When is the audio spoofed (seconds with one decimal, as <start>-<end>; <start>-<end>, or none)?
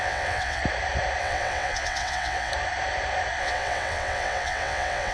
0.0-0.6; 1.2-2.5; 3.4-5.1